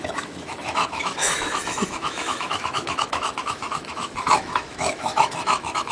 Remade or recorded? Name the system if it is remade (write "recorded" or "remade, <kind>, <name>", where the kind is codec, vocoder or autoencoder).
remade, autoencoder, DAC-VAE